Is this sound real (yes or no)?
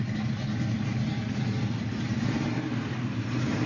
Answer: yes